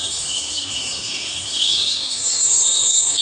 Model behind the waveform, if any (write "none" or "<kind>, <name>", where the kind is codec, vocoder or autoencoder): codec, SNAC